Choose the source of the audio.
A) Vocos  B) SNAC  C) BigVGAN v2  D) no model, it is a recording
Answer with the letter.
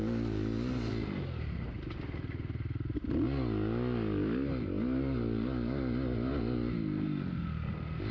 D